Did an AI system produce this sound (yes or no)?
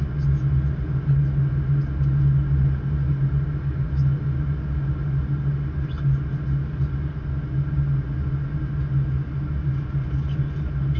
no